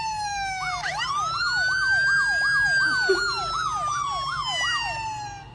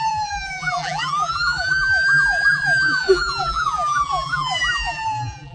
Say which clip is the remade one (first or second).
second